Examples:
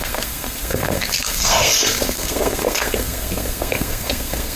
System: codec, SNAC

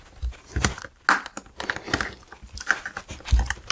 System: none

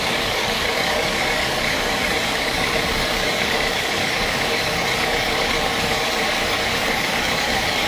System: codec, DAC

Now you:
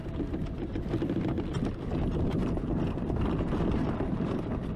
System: none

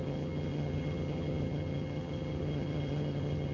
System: vocoder, HiFi-GAN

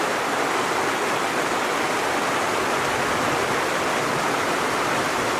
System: none